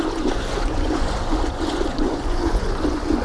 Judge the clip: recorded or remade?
remade